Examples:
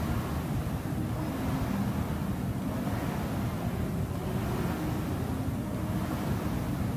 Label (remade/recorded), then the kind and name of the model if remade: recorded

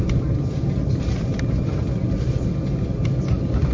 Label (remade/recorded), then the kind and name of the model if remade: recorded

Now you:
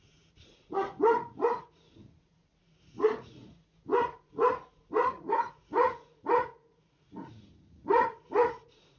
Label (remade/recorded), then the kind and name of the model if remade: remade, vocoder, Vocos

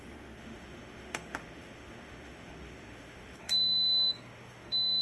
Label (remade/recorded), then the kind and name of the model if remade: remade, autoencoder, DAC-VAE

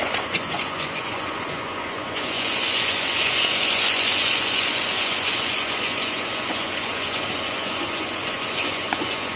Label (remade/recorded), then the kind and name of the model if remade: remade, vocoder, Vocos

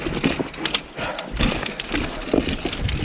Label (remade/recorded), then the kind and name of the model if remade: recorded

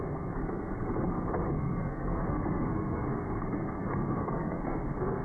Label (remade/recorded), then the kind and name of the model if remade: remade, codec, SNAC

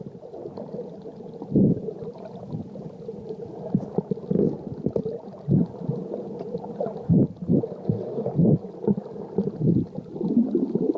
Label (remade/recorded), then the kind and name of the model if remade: recorded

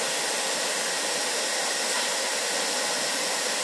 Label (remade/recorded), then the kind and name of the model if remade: recorded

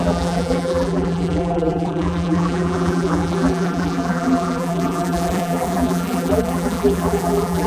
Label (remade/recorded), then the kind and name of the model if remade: remade, vocoder, BigVGAN v2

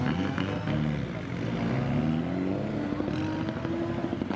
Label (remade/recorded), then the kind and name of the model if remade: recorded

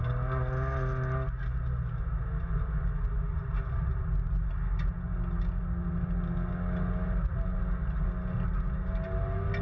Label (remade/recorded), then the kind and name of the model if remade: recorded